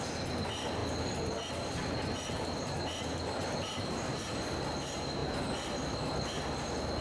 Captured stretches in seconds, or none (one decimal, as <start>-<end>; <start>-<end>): 0.0-3.4; 4.3-7.0